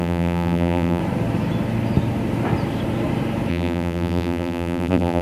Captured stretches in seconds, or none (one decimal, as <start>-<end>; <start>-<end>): 1.0-3.5